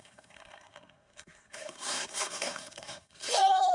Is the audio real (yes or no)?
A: no